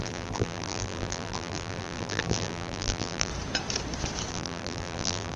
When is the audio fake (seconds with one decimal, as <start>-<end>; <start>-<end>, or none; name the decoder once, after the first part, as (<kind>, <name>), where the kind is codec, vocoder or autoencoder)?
0.0-3.3 (vocoder, BigVGAN v2); 4.3-5.4